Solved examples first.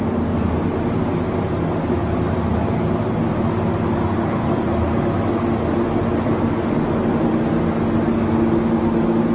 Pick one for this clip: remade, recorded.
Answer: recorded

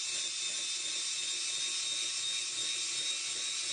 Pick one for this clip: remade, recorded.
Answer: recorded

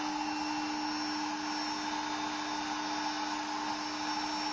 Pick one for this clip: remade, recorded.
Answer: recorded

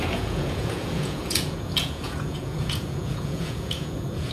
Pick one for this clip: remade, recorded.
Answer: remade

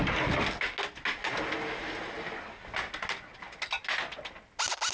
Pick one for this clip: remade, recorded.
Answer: recorded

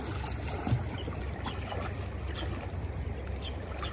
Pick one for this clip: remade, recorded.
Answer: recorded